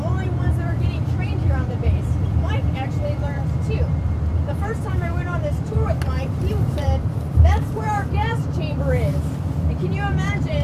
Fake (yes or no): yes